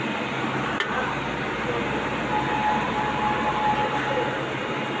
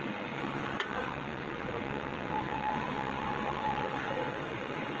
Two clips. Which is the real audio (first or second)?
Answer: first